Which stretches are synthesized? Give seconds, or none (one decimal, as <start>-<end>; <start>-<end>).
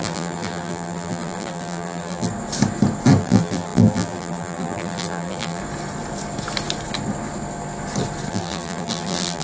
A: 0.0-2.3; 3.2-5.6; 8.3-9.4